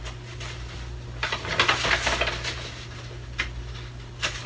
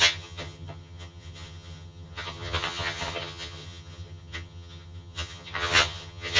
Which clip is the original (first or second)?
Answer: first